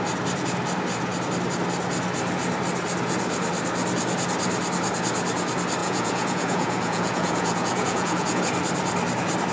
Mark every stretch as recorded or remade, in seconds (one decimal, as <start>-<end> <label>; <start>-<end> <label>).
0.0-5.8 recorded; 5.8-8.4 remade; 8.4-9.5 recorded